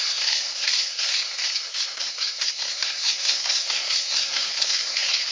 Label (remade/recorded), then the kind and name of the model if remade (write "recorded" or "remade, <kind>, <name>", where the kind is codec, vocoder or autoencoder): remade, codec, SNAC